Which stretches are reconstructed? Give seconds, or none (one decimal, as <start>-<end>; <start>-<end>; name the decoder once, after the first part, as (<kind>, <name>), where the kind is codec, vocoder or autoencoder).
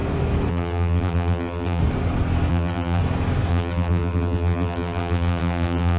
0.5-1.8 (vocoder, BigVGAN v2); 2.5-3.0; 3.5-6.0